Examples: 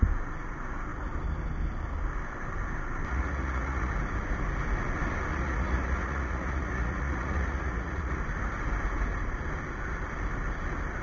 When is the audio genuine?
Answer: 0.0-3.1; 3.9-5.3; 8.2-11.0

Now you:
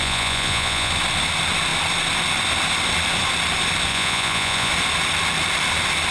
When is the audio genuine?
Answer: 0.9-3.9; 4.7-6.1

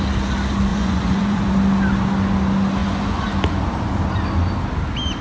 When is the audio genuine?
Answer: 0.0-0.7; 1.5-2.8; 3.3-5.2

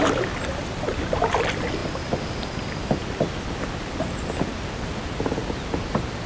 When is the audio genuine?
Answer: 0.0-6.3

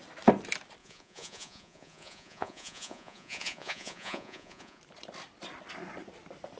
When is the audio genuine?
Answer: 0.0-0.8; 4.8-6.6

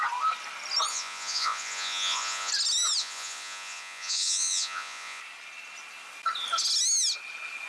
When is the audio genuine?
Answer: 0.0-0.9; 2.5-3.0; 5.2-7.7

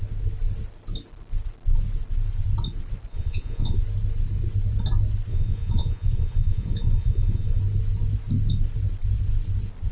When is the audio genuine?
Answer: 0.0-3.1; 3.8-5.3; 7.6-9.9

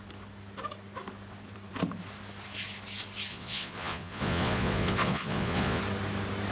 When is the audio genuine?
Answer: 0.0-3.3; 5.8-6.5